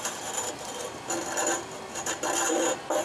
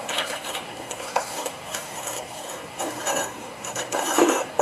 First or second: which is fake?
second